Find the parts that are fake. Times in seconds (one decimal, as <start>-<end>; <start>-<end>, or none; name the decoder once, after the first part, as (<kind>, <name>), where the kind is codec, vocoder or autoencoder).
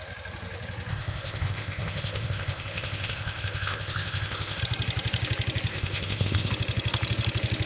0.9-4.6 (codec, ZipCodec); 5.7-6.5